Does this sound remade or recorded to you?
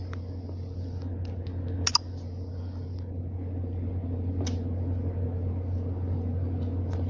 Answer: recorded